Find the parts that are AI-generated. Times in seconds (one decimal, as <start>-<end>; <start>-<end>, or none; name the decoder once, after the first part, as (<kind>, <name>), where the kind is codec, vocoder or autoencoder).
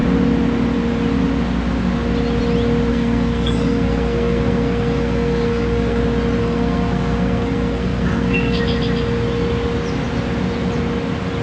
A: 2.9-6.0 (codec, SNAC); 6.4-8.6